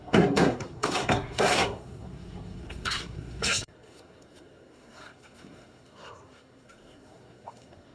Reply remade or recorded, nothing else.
remade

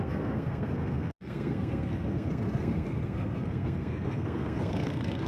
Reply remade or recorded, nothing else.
remade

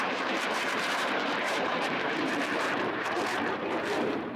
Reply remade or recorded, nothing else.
remade